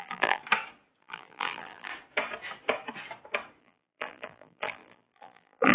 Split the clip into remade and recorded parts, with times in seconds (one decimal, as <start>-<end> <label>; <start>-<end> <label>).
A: 0.0-0.4 remade; 0.4-1.0 recorded; 1.0-1.9 remade; 1.9-3.6 recorded; 3.6-5.7 remade